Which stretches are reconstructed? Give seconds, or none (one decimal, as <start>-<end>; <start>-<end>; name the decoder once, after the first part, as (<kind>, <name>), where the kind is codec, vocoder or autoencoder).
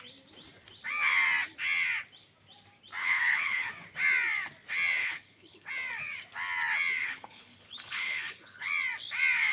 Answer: 3.0-3.7 (codec, HILCodec); 5.0-5.7; 7.0-8.7